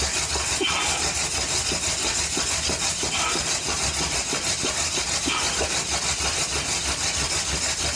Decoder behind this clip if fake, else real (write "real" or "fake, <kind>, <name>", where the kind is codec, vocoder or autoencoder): real